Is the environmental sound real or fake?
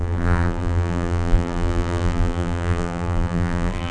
fake